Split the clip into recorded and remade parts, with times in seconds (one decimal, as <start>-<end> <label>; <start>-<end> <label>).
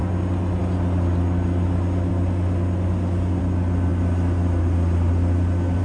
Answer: 0.0-5.8 recorded